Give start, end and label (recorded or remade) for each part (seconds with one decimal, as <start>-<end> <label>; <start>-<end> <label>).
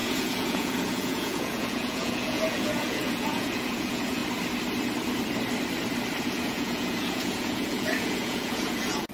0.0-4.2 remade; 4.2-6.2 recorded; 6.2-9.1 remade